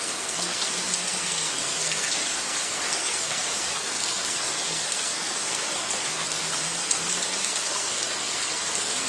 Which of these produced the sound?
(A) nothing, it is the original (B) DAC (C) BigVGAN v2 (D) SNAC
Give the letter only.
D